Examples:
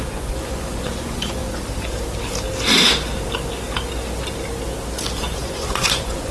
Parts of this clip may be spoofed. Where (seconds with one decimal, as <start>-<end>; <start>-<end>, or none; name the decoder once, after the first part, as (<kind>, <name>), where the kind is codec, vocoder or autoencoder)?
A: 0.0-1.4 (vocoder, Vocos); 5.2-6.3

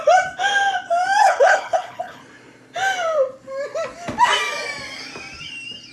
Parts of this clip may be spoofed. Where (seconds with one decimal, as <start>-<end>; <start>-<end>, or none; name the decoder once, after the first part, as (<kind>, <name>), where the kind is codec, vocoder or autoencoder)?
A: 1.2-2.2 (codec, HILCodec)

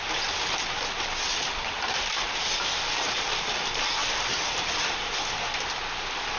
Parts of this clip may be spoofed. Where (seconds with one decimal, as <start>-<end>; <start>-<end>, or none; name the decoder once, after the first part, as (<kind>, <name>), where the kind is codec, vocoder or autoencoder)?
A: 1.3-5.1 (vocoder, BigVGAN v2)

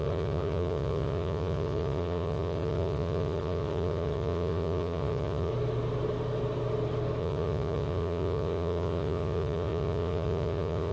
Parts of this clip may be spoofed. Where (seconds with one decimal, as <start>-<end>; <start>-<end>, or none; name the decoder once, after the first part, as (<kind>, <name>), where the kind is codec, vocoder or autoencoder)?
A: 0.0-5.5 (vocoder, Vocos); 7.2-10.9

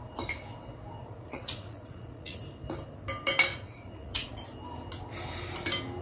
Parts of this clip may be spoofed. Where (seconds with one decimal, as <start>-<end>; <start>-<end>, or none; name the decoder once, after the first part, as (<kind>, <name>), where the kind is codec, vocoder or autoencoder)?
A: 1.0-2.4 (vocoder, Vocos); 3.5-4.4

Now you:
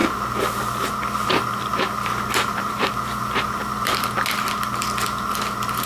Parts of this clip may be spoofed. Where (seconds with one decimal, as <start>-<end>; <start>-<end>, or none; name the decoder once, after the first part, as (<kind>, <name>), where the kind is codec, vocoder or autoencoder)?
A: 0.0-0.6 (vocoder, BigVGAN v2); 1.7-2.9

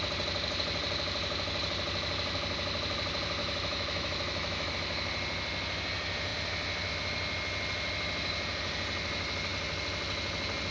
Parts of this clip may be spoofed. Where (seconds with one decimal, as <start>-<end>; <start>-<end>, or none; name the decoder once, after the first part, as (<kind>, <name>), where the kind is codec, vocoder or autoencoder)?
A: 3.4-4.7 (autoencoder, DAC-VAE)